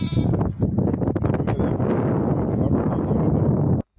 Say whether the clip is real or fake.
real